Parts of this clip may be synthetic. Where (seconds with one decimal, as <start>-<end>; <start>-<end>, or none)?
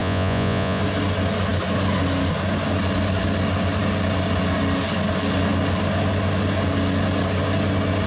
0.0-0.8